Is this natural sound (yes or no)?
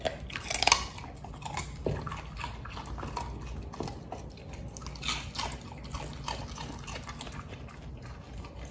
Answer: yes